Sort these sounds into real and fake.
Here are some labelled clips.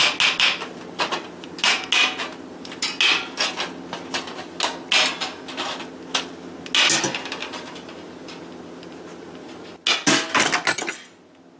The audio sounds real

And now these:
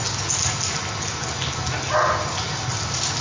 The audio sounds real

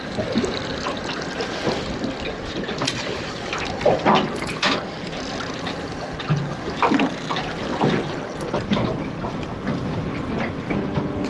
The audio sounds real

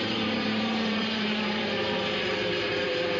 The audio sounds fake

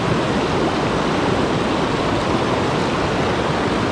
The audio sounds real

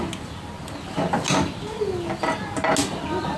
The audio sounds real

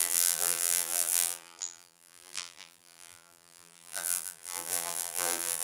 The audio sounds fake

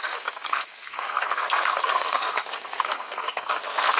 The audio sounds fake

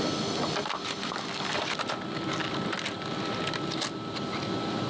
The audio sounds real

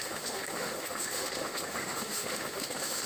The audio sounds fake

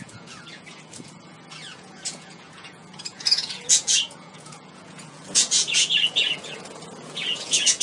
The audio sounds fake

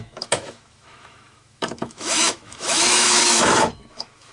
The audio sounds fake